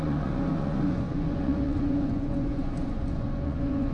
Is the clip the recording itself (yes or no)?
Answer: no